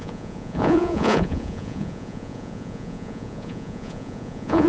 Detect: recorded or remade remade